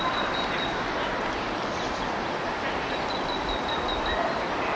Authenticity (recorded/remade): recorded